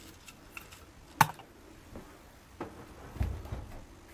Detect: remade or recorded recorded